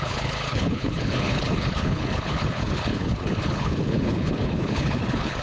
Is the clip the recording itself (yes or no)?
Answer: no